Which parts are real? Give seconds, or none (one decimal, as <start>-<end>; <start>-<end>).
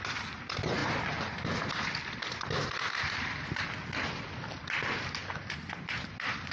0.0-6.5